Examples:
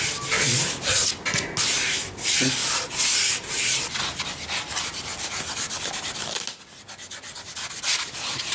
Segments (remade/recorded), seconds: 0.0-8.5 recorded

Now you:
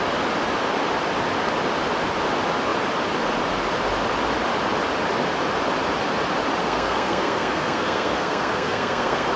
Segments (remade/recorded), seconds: 0.0-6.6 recorded; 6.6-9.4 remade

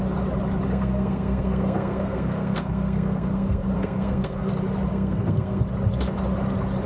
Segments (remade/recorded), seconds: 0.0-0.7 recorded; 0.7-4.5 remade; 4.5-4.9 recorded; 4.9-5.6 remade; 5.6-6.9 recorded

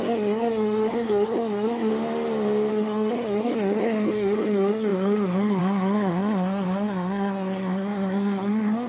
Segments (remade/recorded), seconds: 0.0-1.9 remade; 1.9-2.7 recorded; 2.7-8.9 remade

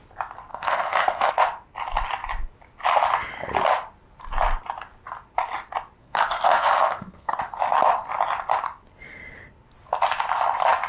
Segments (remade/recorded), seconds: 0.0-0.5 recorded; 0.5-1.3 remade; 1.3-6.0 recorded; 6.0-7.4 remade; 7.4-10.9 recorded